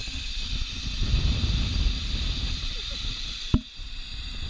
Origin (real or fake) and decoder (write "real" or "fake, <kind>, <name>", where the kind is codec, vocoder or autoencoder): fake, vocoder, BigVGAN v2